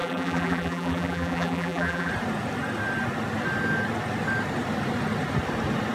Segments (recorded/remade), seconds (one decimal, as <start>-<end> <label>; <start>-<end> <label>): 0.0-2.1 remade; 2.1-5.9 recorded

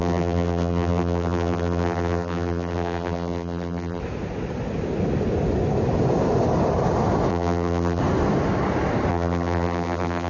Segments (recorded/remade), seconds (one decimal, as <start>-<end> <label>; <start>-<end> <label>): 0.0-4.0 remade; 4.0-7.3 recorded; 7.3-8.0 remade; 8.0-9.1 recorded; 9.1-10.3 remade

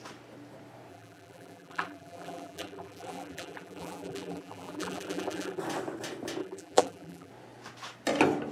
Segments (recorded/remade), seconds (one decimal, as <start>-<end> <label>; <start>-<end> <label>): 0.0-0.9 recorded; 0.9-5.6 remade; 5.6-6.4 recorded; 6.4-7.3 remade; 7.3-8.5 recorded

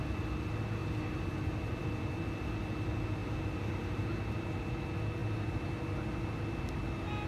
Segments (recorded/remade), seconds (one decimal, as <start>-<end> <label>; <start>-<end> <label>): 0.0-3.2 recorded; 3.2-4.1 remade; 4.1-7.3 recorded